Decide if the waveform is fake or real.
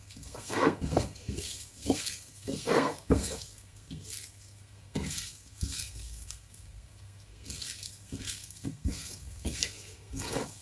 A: fake